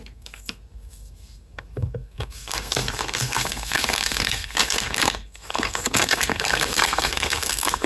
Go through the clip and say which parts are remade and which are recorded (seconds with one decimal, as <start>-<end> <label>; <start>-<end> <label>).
0.0-7.9 remade